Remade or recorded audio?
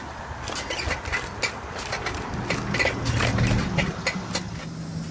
recorded